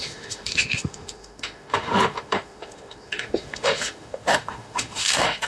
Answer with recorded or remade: remade